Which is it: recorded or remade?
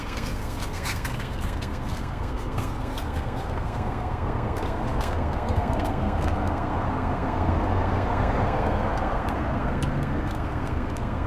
remade